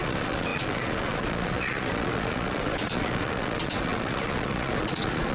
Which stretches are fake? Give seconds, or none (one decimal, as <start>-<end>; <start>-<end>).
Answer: 0.0-5.3